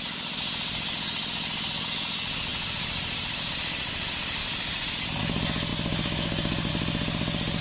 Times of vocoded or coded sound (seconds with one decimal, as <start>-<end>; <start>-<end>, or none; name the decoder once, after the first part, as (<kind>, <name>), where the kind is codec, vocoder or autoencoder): 2.5-3.5 (vocoder, BigVGAN v2); 4.4-5.2; 5.7-6.7